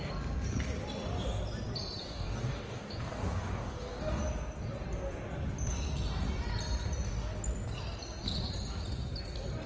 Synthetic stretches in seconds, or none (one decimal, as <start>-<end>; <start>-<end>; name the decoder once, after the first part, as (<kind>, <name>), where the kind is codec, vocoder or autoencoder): 2.0-4.2 (codec, DAC)